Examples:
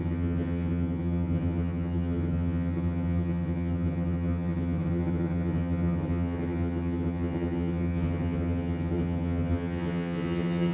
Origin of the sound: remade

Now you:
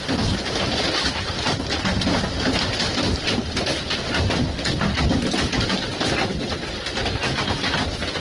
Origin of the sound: recorded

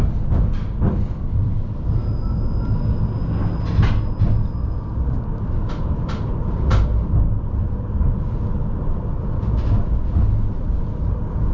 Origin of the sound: recorded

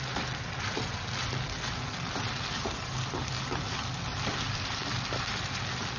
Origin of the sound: recorded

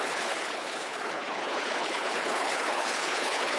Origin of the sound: remade